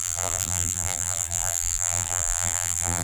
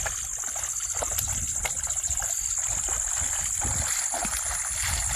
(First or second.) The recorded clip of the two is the second